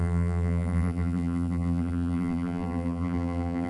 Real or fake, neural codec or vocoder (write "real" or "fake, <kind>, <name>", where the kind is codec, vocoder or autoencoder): fake, vocoder, BigVGAN v2